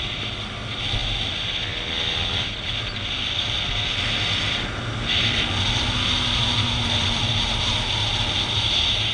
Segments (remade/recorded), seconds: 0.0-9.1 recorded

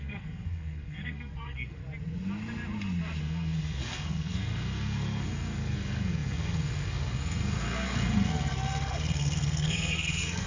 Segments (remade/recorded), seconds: 0.0-1.8 remade; 1.8-3.2 recorded; 3.2-10.5 remade

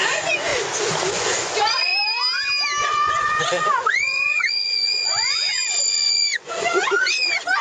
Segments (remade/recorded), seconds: 0.0-0.5 remade; 0.5-1.1 recorded; 1.1-1.9 remade; 1.9-2.8 recorded; 2.8-7.6 remade

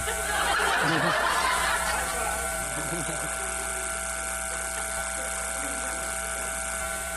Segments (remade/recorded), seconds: 0.0-2.6 remade; 2.6-6.8 recorded; 6.8-7.2 remade

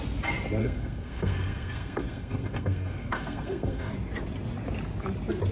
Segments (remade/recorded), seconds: 0.0-0.6 recorded; 0.6-3.9 remade; 3.9-5.5 recorded

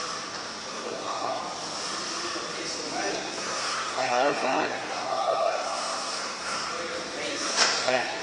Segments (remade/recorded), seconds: 0.0-0.7 recorded; 0.7-1.4 remade; 1.4-3.1 recorded; 3.1-6.7 remade; 6.7-7.3 recorded; 7.3-8.2 remade

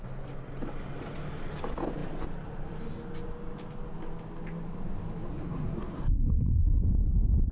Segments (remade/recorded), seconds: 0.0-5.3 recorded; 5.3-6.8 remade; 6.8-7.5 recorded